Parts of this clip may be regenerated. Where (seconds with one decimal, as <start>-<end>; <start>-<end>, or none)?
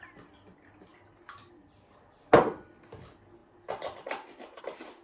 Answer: 3.4-4.6